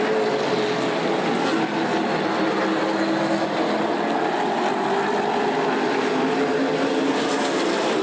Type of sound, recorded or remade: recorded